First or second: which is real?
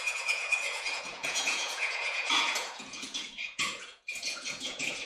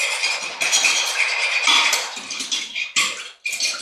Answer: second